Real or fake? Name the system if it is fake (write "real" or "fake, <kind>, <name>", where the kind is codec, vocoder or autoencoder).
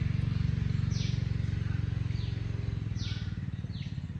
real